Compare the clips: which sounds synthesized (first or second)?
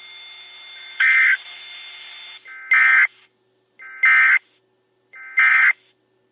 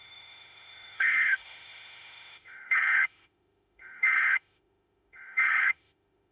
second